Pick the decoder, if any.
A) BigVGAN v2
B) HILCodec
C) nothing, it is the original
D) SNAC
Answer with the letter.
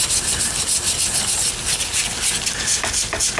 C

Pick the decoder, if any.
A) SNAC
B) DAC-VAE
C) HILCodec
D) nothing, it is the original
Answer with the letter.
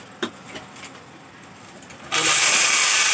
D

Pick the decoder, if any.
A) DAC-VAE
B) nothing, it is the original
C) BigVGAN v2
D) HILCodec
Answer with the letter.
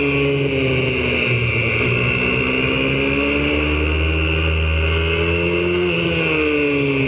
B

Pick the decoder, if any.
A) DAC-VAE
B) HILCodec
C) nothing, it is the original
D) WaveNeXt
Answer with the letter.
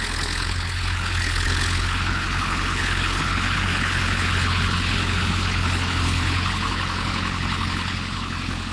B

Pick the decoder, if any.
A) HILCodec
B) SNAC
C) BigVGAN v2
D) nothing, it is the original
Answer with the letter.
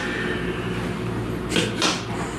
D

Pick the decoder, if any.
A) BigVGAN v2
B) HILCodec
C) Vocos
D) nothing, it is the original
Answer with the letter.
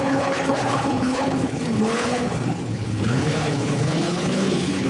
B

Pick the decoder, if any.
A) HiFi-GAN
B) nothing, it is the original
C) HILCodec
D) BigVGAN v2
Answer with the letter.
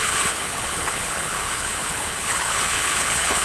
C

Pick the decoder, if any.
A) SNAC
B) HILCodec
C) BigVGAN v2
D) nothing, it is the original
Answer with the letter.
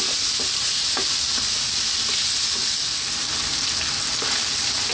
D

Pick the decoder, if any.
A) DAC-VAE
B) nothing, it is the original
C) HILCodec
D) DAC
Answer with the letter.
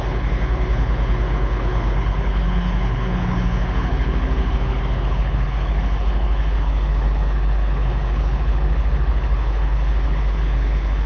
C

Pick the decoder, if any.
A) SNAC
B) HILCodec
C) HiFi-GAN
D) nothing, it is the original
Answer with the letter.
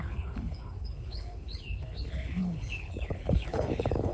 B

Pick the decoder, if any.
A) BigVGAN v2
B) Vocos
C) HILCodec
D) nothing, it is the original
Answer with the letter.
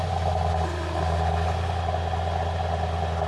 D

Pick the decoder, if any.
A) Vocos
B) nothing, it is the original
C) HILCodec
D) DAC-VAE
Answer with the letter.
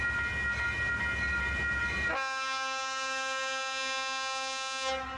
B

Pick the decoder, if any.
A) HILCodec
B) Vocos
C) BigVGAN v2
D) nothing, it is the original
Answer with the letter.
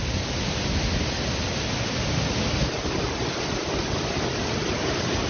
D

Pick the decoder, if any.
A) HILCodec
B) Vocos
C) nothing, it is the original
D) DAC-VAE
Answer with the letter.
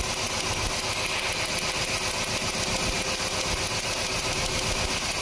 C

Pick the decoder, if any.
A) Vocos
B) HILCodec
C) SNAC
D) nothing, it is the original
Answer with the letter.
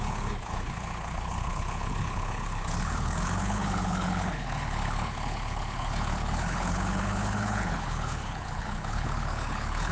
B